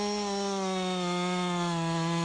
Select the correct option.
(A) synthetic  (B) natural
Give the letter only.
B